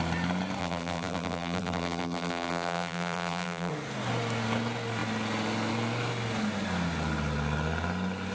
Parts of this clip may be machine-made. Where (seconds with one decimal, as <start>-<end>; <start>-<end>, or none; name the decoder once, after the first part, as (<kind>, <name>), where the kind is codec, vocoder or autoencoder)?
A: 0.6-3.7 (vocoder, BigVGAN v2)